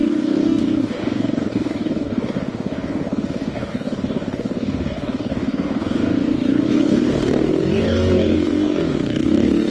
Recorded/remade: remade